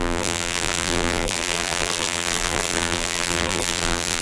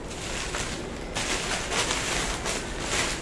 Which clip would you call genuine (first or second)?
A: second